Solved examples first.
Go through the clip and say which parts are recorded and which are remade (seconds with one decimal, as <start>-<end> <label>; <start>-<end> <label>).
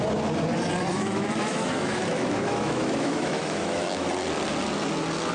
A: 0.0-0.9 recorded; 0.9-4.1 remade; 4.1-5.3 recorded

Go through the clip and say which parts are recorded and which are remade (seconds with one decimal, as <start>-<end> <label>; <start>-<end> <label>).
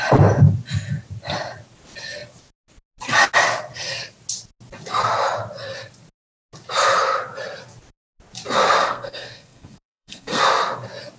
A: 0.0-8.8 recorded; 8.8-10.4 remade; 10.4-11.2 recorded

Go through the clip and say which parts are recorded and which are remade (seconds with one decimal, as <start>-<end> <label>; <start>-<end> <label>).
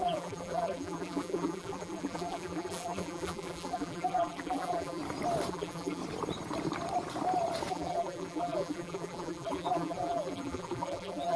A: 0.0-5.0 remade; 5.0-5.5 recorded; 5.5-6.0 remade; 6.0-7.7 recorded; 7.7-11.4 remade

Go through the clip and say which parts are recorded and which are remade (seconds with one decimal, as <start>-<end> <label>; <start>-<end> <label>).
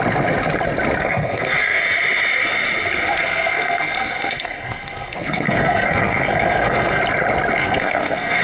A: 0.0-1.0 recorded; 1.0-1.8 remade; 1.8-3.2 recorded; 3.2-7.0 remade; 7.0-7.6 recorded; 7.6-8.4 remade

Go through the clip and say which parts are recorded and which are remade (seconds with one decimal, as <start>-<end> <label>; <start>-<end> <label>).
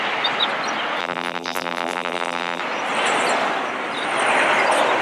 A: 0.0-1.0 recorded; 1.0-2.6 remade; 2.6-5.0 recorded